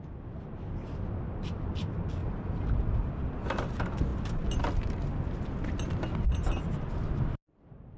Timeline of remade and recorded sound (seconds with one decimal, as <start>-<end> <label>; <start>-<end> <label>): 0.0-2.2 recorded; 2.2-3.3 remade; 3.3-8.0 recorded